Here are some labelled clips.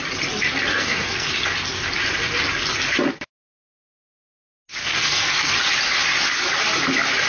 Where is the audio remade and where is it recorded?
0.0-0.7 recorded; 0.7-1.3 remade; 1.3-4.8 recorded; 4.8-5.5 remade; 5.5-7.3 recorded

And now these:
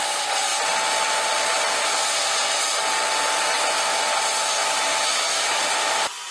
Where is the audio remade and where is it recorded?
0.0-4.9 recorded; 4.9-5.6 remade; 5.6-6.3 recorded

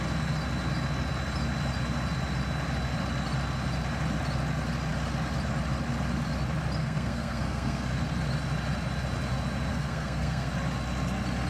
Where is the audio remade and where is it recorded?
0.0-6.8 recorded; 6.8-7.9 remade; 7.9-9.7 recorded; 9.7-10.5 remade; 10.5-11.5 recorded

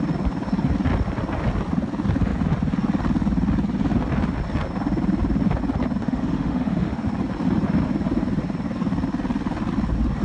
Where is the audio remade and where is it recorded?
0.0-6.0 recorded; 6.0-7.1 remade; 7.1-10.2 recorded

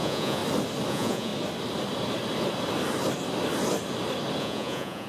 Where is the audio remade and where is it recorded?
0.0-0.4 remade; 0.4-0.9 recorded; 0.9-1.3 remade; 1.3-4.4 recorded; 4.4-5.1 remade

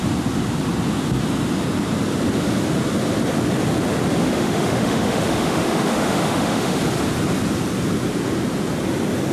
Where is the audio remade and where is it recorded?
0.0-4.2 recorded; 4.2-6.8 remade; 6.8-9.3 recorded

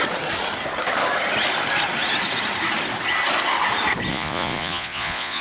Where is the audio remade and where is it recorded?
0.0-4.1 recorded; 4.1-5.4 remade

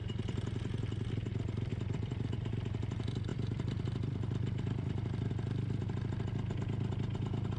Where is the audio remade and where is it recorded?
0.0-1.7 recorded; 1.7-2.5 remade; 2.5-3.3 recorded; 3.3-5.3 remade; 5.3-7.6 recorded